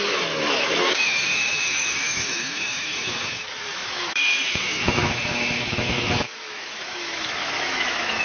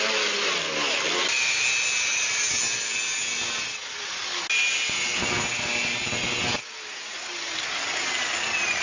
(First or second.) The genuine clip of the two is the second